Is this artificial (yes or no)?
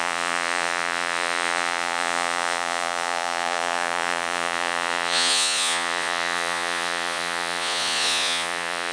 yes